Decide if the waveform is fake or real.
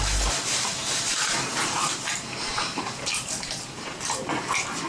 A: fake